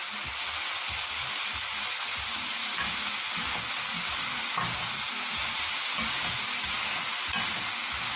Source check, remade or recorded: recorded